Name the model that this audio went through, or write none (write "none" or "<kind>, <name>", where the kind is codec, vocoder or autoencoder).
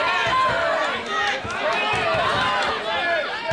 none